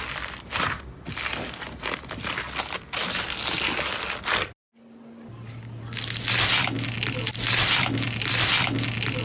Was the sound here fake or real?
real